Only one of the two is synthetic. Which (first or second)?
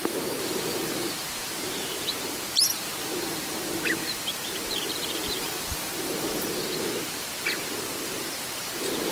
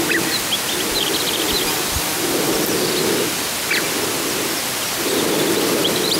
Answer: first